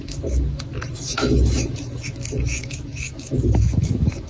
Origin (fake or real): fake